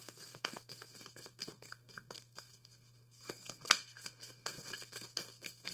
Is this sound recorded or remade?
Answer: remade